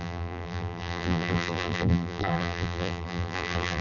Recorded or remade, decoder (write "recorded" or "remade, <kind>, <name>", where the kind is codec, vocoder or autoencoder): remade, vocoder, BigVGAN v2